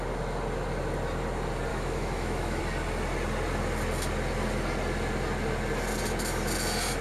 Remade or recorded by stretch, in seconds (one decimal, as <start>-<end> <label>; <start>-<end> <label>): 0.0-1.7 recorded; 1.7-2.6 remade; 2.6-7.0 recorded